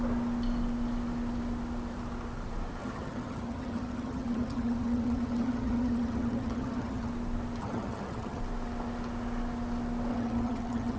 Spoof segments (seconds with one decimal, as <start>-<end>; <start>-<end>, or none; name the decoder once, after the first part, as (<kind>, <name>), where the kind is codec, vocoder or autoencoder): 2.8-7.1 (vocoder, HiFi-GAN); 7.6-8.4; 10.1-11.0